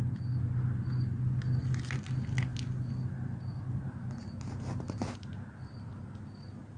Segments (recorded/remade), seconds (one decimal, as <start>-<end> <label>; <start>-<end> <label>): 0.0-6.8 recorded

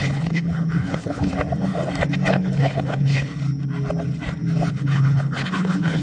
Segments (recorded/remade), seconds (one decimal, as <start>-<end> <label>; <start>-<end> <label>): 0.0-1.3 remade; 1.3-2.3 recorded; 2.3-3.3 remade; 3.3-4.7 recorded; 4.7-6.0 remade

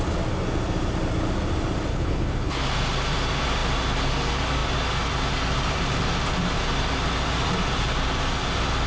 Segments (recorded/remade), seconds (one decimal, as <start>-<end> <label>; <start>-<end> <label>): 0.0-1.9 recorded; 1.9-2.6 remade; 2.6-8.9 recorded

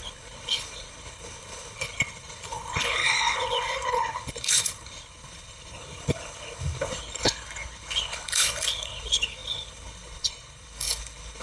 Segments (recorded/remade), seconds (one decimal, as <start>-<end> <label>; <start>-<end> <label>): 0.0-11.4 remade